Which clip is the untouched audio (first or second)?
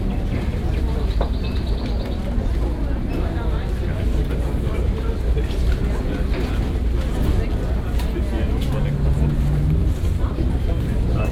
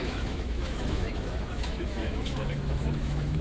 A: first